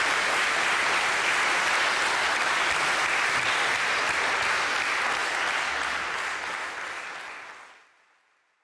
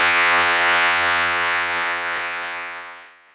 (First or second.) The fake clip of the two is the second